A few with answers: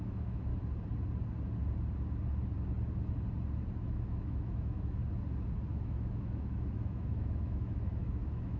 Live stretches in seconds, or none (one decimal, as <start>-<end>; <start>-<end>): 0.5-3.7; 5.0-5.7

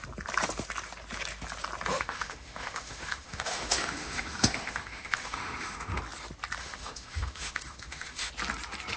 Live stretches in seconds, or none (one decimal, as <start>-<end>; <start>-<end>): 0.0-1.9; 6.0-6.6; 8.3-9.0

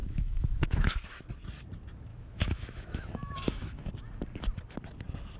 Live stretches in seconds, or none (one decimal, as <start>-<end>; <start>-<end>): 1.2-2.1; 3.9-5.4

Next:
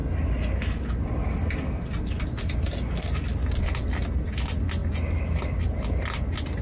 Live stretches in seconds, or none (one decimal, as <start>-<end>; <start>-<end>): 0.0-6.6

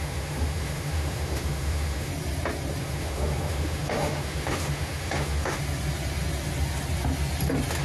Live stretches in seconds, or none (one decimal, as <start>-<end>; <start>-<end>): 2.1-2.8; 5.6-7.8

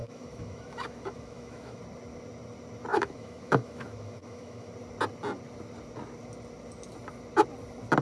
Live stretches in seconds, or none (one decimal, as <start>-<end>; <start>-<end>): 1.8-2.9; 4.7-8.0